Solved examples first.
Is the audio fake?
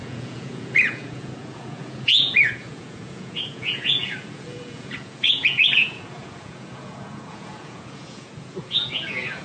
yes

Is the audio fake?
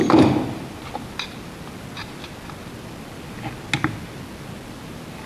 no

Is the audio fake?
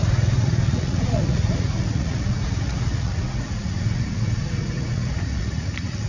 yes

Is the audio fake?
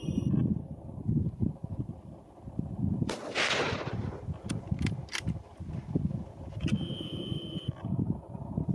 yes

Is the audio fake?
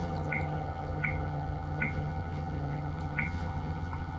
yes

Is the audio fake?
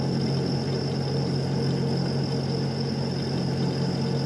no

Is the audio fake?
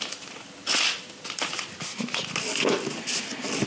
no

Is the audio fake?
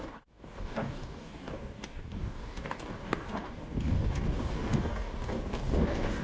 yes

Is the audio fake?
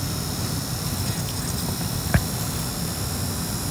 no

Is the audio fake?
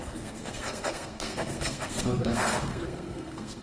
yes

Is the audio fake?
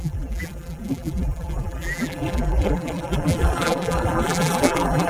yes